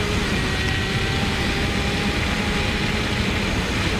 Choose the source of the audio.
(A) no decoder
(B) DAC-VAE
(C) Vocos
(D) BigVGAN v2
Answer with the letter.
A